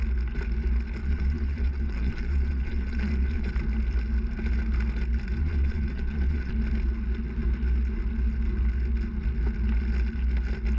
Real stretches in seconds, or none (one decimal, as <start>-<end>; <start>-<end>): 0.0-1.0; 3.5-5.4; 6.5-10.8